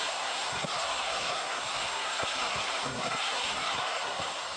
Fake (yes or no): yes